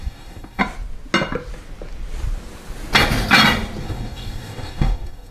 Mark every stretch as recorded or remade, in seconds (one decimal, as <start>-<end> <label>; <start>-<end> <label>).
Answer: 0.0-0.6 remade; 0.6-3.8 recorded; 3.8-5.3 remade